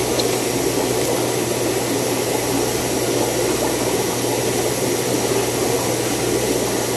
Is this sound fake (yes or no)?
no